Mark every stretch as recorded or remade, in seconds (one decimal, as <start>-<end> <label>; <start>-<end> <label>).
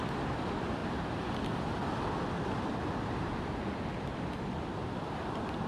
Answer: 0.0-0.8 remade; 0.8-4.2 recorded; 4.2-5.7 remade